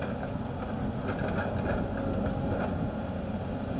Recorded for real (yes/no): yes